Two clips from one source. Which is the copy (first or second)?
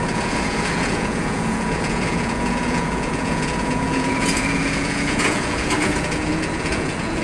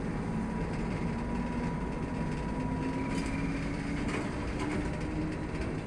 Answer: first